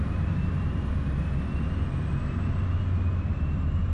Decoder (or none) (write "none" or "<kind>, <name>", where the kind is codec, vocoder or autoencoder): none